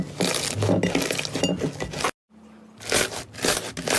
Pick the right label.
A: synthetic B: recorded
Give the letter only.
B